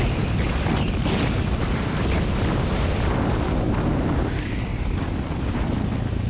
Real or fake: real